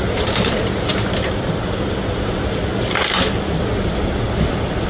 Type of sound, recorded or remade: recorded